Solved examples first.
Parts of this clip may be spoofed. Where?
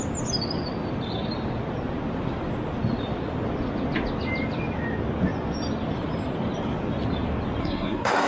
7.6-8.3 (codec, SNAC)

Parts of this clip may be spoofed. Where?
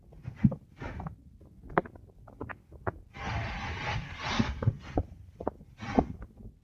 none